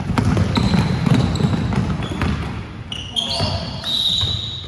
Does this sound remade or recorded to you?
recorded